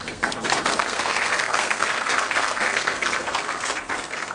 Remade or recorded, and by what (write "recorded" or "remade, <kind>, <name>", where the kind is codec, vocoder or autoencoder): remade, codec, SNAC